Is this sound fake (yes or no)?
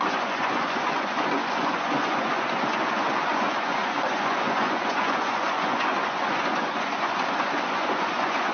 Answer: yes